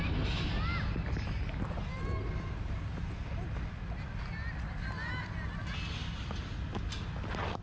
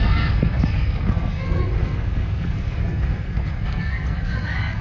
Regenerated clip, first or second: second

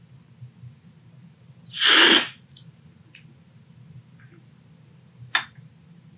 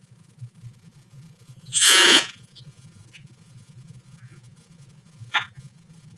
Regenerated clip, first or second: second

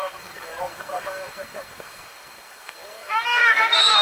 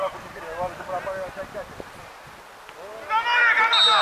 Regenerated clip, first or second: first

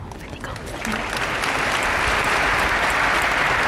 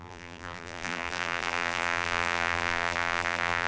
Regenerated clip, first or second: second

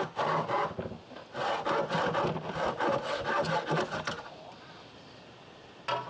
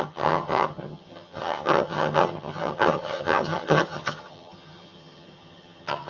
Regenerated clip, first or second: second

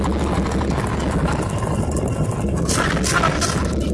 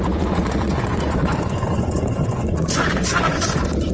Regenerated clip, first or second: second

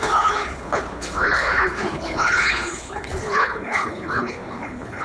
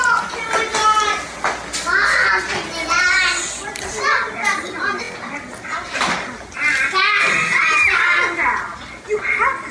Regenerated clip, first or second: first